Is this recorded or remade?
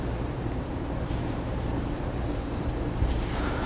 remade